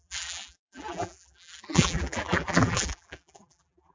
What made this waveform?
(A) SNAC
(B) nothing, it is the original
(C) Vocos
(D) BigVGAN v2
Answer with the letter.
D